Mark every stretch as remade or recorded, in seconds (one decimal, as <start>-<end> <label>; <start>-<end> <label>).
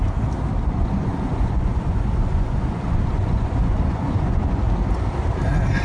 0.0-0.6 recorded; 0.6-4.6 remade; 4.6-5.8 recorded